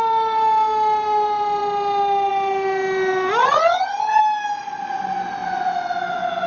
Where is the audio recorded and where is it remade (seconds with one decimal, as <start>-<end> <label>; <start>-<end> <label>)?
0.0-3.4 recorded; 3.4-4.2 remade; 4.2-6.5 recorded